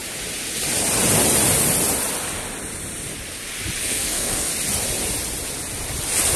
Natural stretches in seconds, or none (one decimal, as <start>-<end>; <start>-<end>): 0.0-3.8; 4.5-6.4